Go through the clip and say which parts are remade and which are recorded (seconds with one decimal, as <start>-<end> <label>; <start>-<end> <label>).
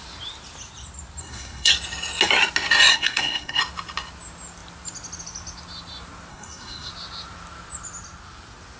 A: 0.0-1.2 recorded; 1.2-1.7 remade; 1.7-2.9 recorded; 2.9-3.6 remade; 3.6-6.3 recorded; 6.3-6.9 remade; 6.9-8.8 recorded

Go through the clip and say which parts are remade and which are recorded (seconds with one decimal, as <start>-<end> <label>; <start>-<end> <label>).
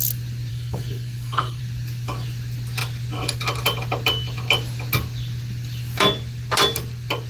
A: 0.0-0.5 recorded; 0.5-1.6 remade; 1.6-7.3 recorded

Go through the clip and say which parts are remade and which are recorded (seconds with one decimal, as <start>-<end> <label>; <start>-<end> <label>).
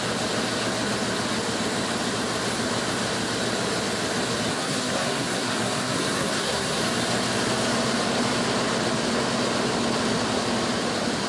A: 0.0-4.5 recorded; 4.5-6.8 remade; 6.8-11.3 recorded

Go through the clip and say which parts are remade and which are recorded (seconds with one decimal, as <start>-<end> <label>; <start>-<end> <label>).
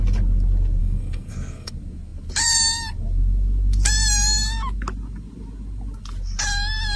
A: 0.0-0.8 recorded; 0.8-1.7 remade; 1.7-7.0 recorded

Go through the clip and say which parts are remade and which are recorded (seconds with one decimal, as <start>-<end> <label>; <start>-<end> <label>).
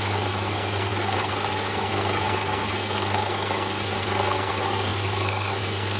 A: 0.0-6.0 remade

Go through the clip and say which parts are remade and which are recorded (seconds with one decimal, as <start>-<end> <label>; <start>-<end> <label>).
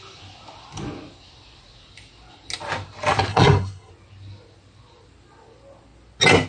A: 0.0-3.3 recorded; 3.3-3.9 remade; 3.9-6.5 recorded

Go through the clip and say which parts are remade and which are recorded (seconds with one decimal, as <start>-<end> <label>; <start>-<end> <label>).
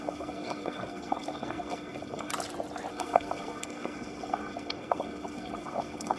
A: 0.0-2.3 remade; 2.3-2.9 recorded; 2.9-6.2 remade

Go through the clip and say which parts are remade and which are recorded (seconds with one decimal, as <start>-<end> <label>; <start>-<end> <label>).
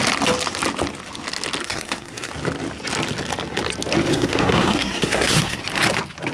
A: 0.0-1.6 recorded; 1.6-2.3 remade; 2.3-4.1 recorded; 4.1-5.6 remade; 5.6-6.3 recorded